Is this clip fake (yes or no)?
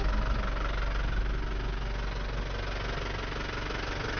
no